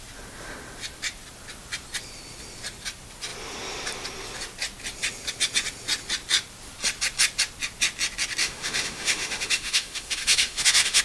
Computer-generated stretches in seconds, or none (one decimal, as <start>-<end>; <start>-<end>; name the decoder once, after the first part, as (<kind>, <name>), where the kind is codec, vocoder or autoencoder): 8.4-11.0 (autoencoder, DAC-VAE)